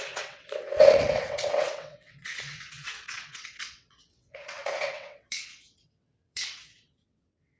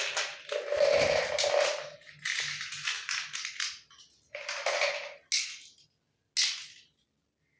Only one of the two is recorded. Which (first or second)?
second